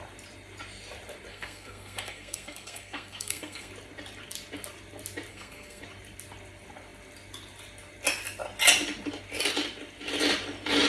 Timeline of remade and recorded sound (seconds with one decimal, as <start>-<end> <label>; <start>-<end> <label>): 0.0-1.3 recorded; 1.3-3.7 remade; 3.7-5.3 recorded; 5.3-5.8 remade; 5.8-10.9 recorded